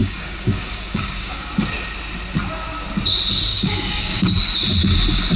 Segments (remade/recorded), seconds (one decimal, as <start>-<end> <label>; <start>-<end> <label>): 0.0-1.5 remade; 1.5-3.5 recorded; 3.5-4.2 remade; 4.2-5.4 recorded